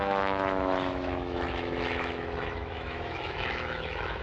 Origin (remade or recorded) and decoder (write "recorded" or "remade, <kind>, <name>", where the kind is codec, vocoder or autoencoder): remade, autoencoder, DAC-VAE